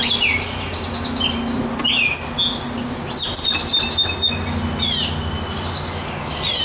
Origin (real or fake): real